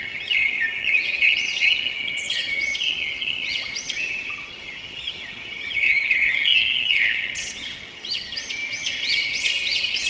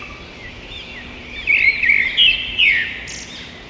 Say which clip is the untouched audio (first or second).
second